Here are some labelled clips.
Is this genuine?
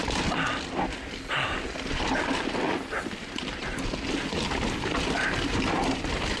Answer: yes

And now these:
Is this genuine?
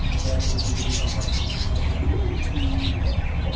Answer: yes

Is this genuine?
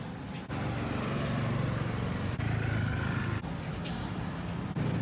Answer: yes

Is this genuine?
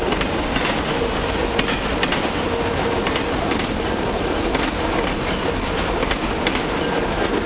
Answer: yes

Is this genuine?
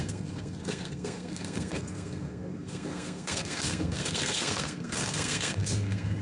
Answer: no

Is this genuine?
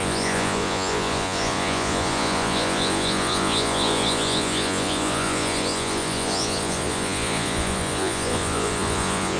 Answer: no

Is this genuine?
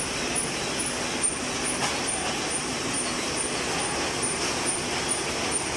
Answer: yes